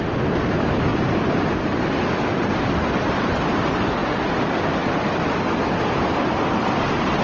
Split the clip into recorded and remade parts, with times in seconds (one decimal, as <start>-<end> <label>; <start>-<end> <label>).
0.0-7.2 recorded

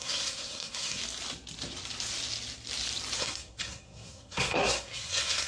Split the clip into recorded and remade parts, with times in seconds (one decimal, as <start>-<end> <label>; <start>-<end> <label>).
0.0-1.0 remade; 1.0-3.2 recorded; 3.2-5.5 remade

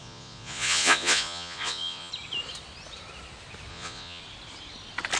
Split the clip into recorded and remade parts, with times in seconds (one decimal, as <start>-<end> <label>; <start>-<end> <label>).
0.0-2.1 remade; 2.1-3.7 recorded; 3.7-4.2 remade; 4.2-5.2 recorded

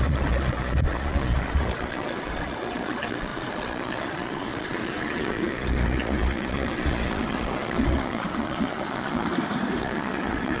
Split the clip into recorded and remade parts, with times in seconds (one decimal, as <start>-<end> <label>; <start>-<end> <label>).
0.0-9.3 remade; 9.3-9.8 recorded; 9.8-10.6 remade

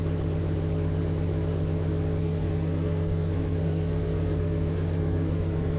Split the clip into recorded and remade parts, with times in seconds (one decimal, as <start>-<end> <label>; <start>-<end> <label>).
0.0-2.2 recorded; 2.2-5.8 remade